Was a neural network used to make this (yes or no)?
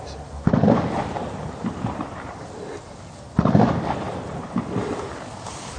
no